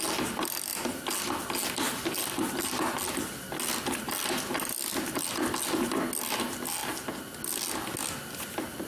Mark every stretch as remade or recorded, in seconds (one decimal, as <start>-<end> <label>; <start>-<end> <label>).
0.0-8.9 recorded